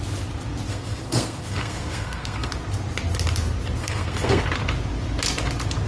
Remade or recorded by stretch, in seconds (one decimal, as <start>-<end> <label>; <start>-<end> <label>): 0.0-0.7 recorded; 0.7-2.5 remade; 2.5-3.8 recorded; 3.8-4.4 remade; 4.4-5.9 recorded